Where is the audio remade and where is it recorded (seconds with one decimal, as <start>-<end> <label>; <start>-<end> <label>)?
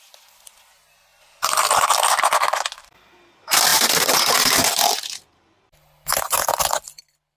0.0-1.1 recorded; 1.1-3.1 remade; 3.1-3.7 recorded; 3.7-4.7 remade; 4.7-7.4 recorded